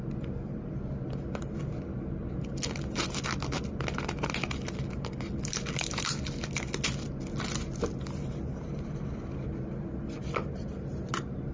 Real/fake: real